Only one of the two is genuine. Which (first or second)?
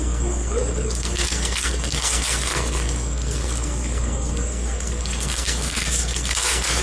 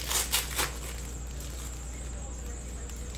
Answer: second